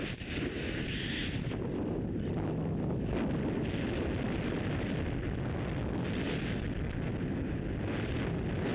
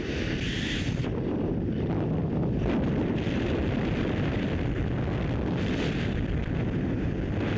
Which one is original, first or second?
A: first